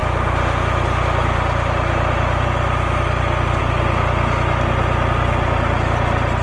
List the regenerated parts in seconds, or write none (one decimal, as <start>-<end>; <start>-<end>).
none